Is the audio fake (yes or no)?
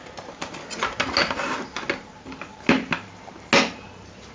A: no